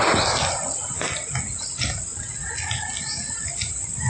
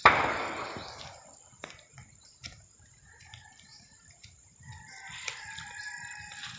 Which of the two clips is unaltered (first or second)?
first